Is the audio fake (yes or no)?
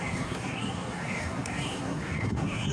yes